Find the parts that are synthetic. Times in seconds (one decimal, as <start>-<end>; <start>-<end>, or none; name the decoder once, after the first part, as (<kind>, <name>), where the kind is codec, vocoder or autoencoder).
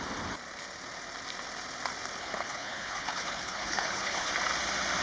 2.2-4.3 (codec, HILCodec)